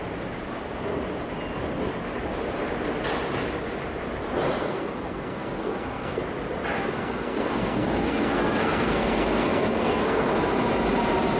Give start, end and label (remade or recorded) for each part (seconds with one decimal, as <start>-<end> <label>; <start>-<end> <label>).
0.0-4.6 recorded; 4.6-6.2 remade; 6.2-6.8 recorded; 6.8-10.3 remade; 10.3-11.4 recorded